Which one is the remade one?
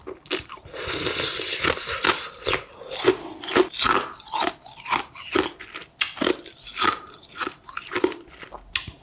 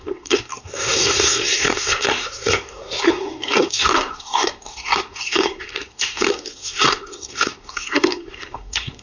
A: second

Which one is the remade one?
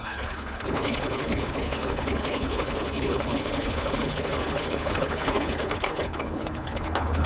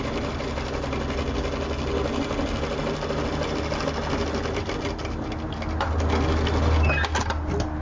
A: first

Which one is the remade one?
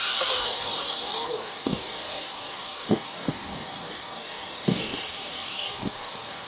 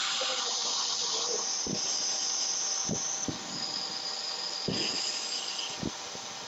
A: first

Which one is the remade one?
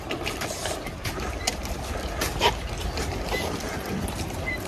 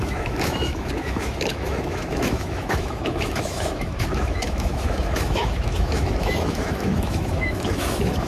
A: second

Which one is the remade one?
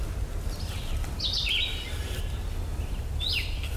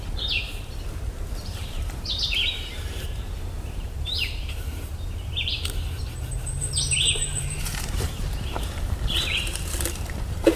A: second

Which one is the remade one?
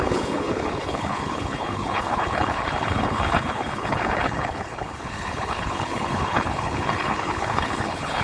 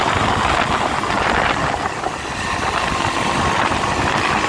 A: first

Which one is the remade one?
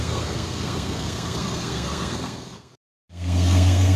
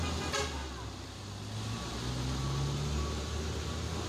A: first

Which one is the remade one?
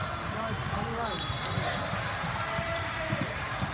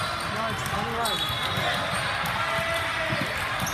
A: first